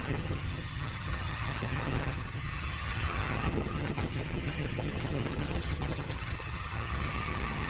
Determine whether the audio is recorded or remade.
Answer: remade